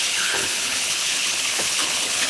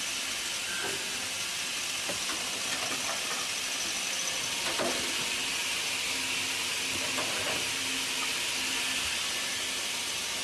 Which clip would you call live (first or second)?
second